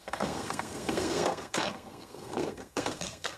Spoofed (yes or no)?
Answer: yes